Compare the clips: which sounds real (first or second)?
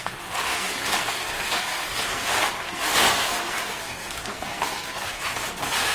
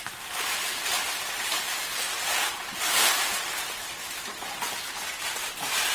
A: second